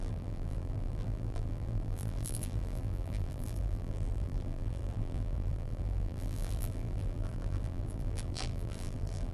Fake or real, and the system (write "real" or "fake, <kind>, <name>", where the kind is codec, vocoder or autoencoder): fake, vocoder, BigVGAN v2